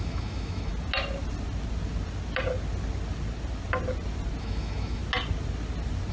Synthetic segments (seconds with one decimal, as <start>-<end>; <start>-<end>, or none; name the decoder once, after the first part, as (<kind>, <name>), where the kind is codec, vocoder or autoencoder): 0.0-0.7 (autoencoder, DAC-VAE); 4.4-5.0